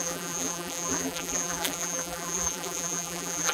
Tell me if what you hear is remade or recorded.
remade